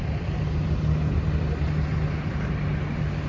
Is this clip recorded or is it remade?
recorded